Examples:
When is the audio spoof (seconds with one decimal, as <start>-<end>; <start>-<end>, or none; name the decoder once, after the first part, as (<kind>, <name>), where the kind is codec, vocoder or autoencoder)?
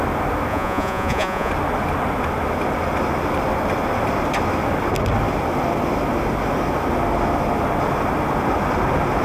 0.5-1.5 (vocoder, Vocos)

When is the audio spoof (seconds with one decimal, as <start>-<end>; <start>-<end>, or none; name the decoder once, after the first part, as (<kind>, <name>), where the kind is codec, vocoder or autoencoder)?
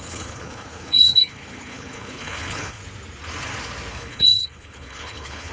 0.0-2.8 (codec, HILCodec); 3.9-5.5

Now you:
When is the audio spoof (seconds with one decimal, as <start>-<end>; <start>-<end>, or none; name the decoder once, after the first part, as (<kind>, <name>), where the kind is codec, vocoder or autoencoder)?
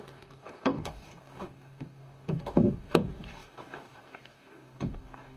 0.0-5.4 (codec, DAC)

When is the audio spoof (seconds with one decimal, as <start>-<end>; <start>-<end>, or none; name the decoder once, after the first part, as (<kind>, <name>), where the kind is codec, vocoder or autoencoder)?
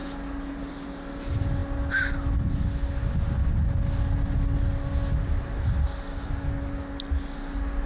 none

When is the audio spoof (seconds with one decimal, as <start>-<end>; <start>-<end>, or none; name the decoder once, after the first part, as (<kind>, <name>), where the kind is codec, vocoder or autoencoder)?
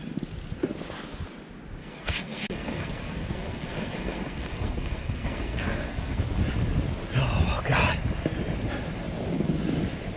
1.8-6.2 (codec, SNAC)